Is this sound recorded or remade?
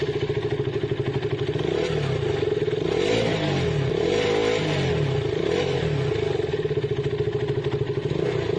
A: recorded